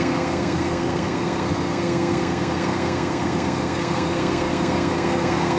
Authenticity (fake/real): fake